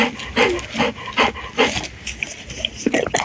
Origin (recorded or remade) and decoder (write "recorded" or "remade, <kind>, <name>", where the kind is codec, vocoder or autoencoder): recorded